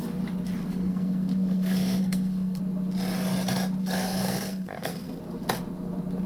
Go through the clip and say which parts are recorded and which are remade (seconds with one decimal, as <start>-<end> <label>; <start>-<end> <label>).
0.0-0.6 recorded; 0.6-2.6 remade; 2.6-3.8 recorded; 3.8-5.2 remade; 5.2-6.3 recorded